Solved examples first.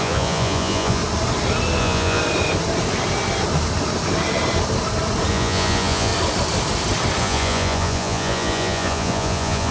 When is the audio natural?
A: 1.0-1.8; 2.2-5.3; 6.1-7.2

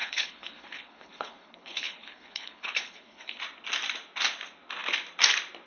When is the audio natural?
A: 3.4-5.7

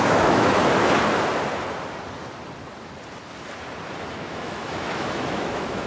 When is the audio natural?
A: 0.6-4.1